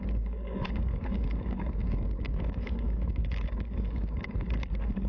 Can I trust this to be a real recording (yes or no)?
no